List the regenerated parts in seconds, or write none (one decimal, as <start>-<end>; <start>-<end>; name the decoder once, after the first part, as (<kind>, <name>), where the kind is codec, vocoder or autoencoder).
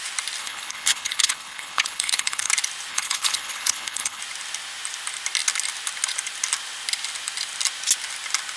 0.4-2.5 (codec, HILCodec); 2.9-4.2